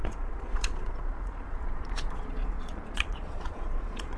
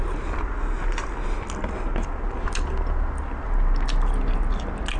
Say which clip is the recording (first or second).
second